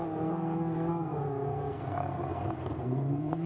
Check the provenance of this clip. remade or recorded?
remade